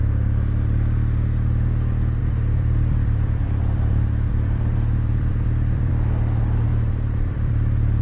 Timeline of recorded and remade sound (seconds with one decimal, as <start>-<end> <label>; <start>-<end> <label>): 0.0-2.2 recorded; 2.2-5.9 remade; 5.9-6.7 recorded; 6.7-7.5 remade; 7.5-8.0 recorded